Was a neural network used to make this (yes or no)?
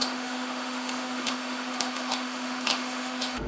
yes